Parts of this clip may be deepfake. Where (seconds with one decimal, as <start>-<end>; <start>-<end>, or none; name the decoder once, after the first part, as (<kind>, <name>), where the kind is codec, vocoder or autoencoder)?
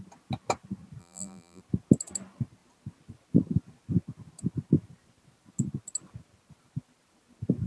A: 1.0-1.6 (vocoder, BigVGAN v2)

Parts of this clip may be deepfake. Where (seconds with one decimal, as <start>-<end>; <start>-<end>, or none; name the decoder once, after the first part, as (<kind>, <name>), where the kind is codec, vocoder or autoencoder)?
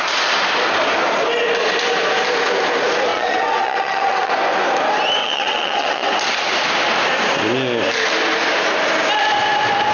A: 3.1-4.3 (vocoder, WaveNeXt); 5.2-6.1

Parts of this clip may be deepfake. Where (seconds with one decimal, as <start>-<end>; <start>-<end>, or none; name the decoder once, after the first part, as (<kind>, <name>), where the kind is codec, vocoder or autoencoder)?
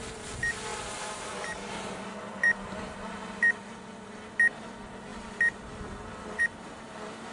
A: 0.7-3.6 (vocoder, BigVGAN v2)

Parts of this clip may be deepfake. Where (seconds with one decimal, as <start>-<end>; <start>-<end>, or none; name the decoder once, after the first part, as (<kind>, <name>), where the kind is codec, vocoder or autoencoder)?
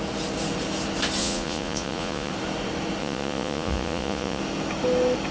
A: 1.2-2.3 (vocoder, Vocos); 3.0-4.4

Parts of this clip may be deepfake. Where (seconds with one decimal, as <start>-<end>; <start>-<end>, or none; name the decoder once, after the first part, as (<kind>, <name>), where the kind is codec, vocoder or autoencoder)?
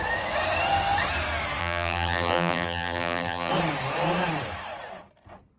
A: 1.6-3.5 (vocoder, BigVGAN v2)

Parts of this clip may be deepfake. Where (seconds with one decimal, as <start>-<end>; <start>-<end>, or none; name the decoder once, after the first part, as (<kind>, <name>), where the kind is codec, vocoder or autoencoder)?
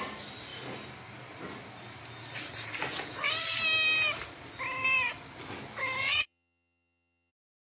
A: 6.0-7.3 (vocoder, HiFi-GAN)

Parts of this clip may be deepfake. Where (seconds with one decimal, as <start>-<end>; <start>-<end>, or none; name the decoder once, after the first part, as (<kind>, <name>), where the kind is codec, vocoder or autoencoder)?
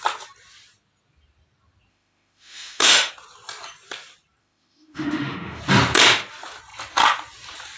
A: 1.9-3.1 (autoencoder, DAC-VAE); 4.4-5.6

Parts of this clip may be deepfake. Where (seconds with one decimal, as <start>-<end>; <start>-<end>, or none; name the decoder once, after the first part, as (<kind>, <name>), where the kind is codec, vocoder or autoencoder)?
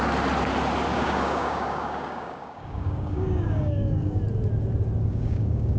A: 0.9-4.2 (codec, DAC); 5.1-5.8